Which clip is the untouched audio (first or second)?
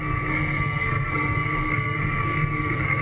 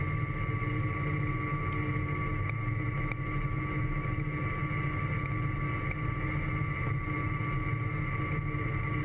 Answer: second